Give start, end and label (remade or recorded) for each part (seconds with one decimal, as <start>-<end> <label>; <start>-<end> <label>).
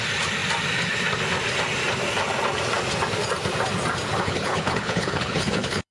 0.0-4.1 recorded; 4.1-5.9 remade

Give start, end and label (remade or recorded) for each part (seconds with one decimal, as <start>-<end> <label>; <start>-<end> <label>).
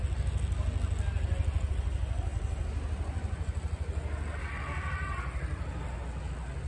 0.0-6.7 recorded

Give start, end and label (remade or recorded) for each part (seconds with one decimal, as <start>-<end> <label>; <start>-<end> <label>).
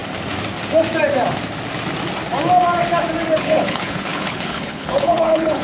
0.0-3.4 recorded; 3.4-5.6 remade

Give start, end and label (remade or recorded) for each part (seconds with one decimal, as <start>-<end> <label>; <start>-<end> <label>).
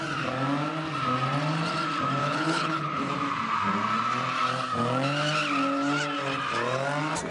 0.0-2.2 recorded; 2.2-3.1 remade; 3.1-7.3 recorded